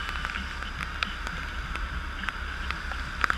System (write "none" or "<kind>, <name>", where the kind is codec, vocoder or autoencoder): none